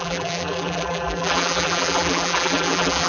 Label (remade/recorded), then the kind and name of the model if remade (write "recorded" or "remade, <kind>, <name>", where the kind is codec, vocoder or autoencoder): remade, vocoder, BigVGAN v2